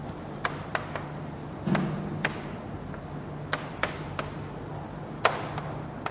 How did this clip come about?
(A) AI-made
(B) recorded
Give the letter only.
B